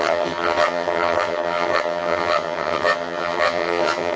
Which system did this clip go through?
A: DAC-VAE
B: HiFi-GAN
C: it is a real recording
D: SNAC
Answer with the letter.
B